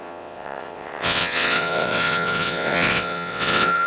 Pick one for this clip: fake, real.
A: fake